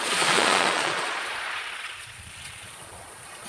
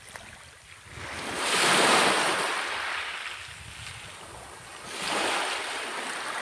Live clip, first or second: second